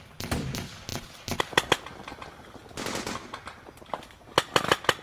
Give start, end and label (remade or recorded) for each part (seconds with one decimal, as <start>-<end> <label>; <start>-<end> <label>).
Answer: 0.0-5.0 recorded